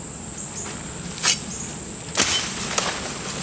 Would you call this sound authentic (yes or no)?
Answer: yes